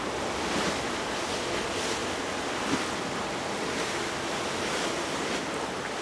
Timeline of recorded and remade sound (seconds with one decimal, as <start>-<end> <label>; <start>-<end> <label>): 0.0-6.0 recorded